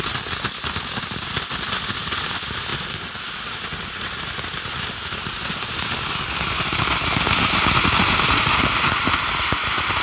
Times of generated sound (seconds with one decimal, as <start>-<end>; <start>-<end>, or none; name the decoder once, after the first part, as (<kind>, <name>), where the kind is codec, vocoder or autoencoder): none